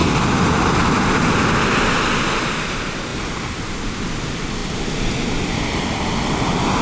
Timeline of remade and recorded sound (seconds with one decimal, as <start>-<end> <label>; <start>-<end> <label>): 0.0-6.8 recorded